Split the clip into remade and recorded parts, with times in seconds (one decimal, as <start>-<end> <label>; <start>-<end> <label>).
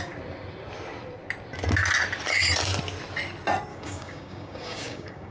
0.0-3.7 recorded; 3.7-5.3 remade